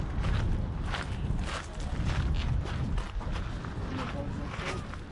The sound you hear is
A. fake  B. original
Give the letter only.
B